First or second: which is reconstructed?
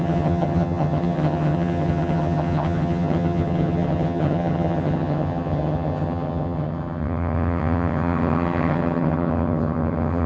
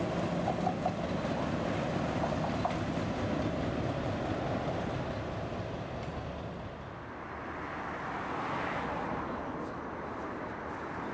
first